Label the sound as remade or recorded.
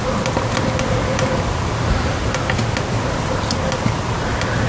recorded